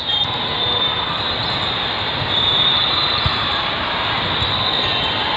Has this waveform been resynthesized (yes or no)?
no